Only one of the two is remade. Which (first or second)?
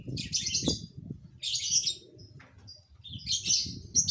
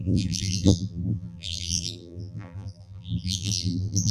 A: second